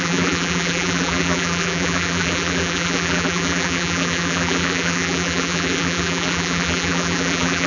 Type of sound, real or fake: fake